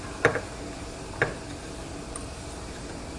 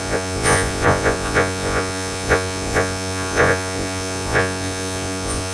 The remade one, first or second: second